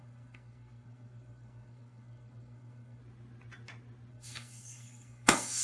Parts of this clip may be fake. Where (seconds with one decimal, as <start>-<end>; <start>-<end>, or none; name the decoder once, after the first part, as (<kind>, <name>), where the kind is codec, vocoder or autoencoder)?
0.0-3.0 (codec, SNAC); 4.1-5.6